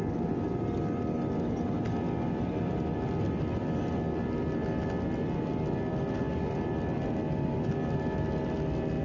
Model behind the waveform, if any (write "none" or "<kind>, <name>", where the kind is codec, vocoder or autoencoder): none